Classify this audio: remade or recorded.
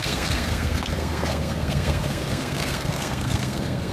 remade